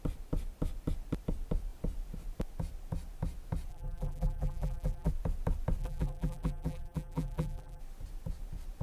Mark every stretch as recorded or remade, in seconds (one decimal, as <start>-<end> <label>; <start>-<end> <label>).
0.0-3.7 recorded; 3.7-5.1 remade; 5.1-5.8 recorded; 5.8-7.8 remade; 7.8-8.8 recorded